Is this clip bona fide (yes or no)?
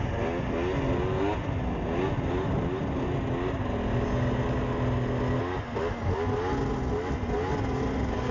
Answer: yes